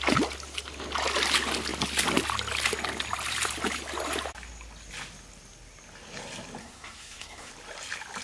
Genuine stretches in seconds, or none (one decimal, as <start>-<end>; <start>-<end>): 0.0-6.6; 7.5-8.2

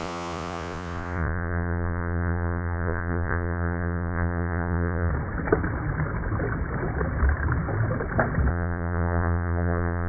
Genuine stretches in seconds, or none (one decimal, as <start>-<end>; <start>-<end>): 5.1-8.5

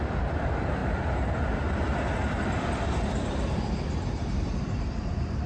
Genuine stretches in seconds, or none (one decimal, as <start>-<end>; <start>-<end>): 0.8-1.7

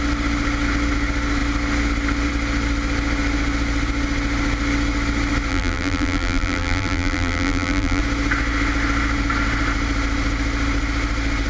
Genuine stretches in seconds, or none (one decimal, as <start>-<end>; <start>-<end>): 0.0-5.5; 8.0-11.5

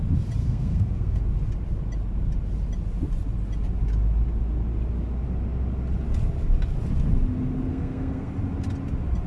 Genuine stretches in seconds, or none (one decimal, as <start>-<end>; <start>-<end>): 0.0-0.4; 1.2-7.7; 8.3-9.3